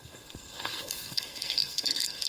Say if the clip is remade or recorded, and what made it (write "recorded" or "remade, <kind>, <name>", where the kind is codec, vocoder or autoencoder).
remade, codec, SNAC